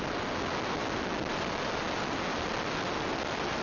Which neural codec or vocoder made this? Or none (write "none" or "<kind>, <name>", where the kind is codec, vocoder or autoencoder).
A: none